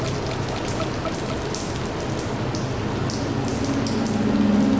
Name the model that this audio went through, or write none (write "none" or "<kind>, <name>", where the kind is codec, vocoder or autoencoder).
none